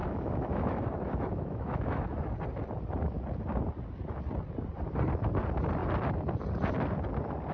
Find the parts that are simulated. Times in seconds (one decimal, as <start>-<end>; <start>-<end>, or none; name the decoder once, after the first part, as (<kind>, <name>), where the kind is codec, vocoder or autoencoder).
0.0-2.3 (autoencoder, DAC-VAE)